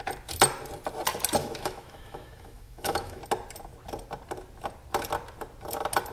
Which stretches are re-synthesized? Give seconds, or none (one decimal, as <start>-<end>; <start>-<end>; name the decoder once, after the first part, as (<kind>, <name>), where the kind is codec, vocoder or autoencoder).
1.4-3.2 (autoencoder, DAC-VAE)